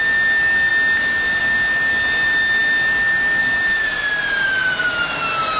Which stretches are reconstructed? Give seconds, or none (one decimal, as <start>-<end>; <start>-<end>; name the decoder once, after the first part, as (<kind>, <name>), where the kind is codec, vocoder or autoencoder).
none